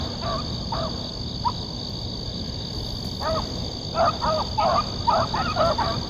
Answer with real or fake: real